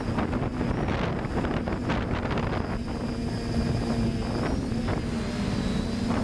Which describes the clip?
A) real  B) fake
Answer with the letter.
A